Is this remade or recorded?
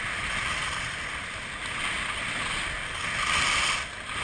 recorded